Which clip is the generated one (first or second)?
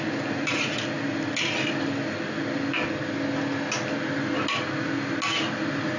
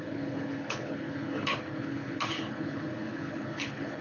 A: second